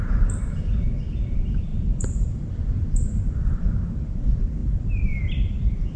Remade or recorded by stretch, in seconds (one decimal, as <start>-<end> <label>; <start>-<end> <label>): 0.0-1.7 recorded; 1.7-3.7 remade; 3.7-4.6 recorded; 4.6-6.0 remade